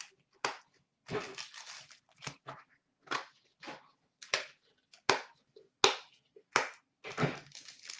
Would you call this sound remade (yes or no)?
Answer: no